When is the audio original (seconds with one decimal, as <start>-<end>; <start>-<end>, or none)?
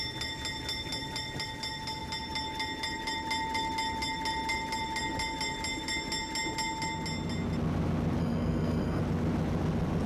0.0-8.2; 9.0-10.1